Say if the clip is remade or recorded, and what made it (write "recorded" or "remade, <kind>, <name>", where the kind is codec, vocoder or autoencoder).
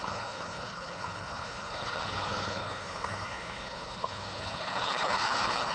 remade, codec, HILCodec